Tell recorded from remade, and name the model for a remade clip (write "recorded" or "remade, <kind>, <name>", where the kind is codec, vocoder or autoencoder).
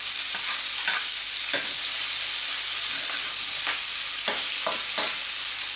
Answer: recorded